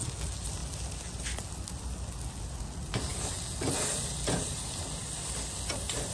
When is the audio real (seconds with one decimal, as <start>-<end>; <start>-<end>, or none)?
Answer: 0.0-6.1